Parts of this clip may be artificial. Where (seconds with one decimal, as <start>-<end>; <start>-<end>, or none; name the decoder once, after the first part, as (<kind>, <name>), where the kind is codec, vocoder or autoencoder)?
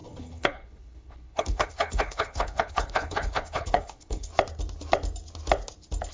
0.0-4.3 (codec, HILCodec)